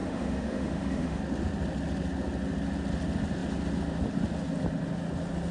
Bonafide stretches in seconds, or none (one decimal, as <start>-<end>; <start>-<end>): 1.2-5.5